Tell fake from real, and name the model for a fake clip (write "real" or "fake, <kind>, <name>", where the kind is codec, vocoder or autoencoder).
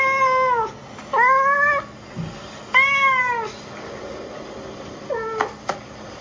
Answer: real